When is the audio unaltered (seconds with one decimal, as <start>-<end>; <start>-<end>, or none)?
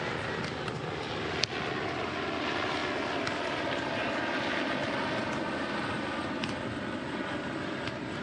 0.0-8.2